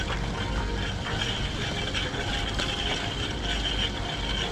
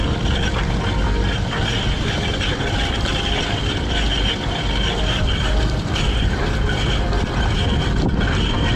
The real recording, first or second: first